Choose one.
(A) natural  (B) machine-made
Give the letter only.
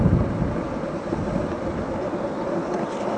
A